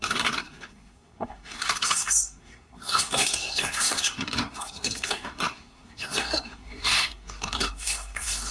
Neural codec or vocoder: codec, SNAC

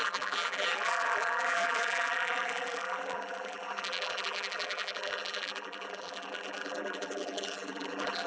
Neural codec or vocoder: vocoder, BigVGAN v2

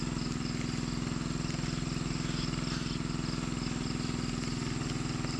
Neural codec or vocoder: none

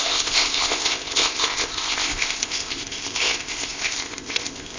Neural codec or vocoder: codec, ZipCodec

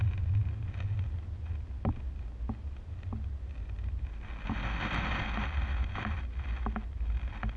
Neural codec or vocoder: none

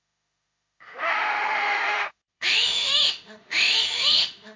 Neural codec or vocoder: autoencoder, DAC-VAE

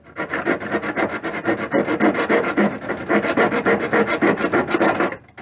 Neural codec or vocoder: none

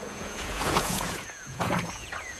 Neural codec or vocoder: vocoder, Vocos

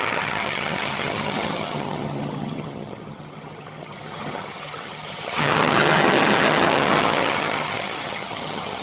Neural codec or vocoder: vocoder, HiFi-GAN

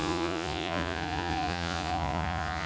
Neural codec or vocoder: vocoder, Vocos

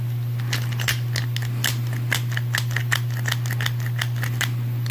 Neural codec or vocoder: none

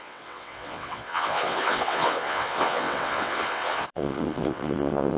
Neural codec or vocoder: vocoder, WaveNeXt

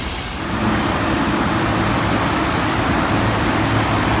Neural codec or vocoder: none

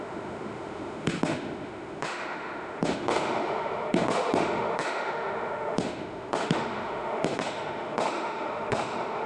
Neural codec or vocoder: autoencoder, DAC-VAE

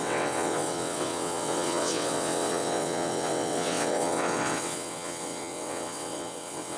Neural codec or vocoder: vocoder, WaveNeXt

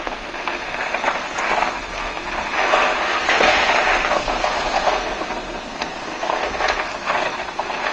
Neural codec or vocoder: codec, SNAC